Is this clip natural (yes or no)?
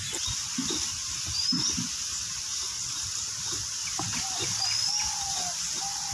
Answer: yes